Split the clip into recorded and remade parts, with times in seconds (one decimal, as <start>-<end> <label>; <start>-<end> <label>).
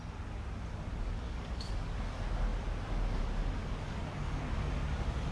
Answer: 0.0-0.9 recorded; 0.9-2.0 remade; 2.0-3.6 recorded; 3.6-4.6 remade; 4.6-5.3 recorded